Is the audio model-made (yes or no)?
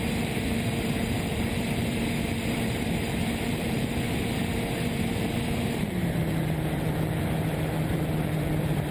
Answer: yes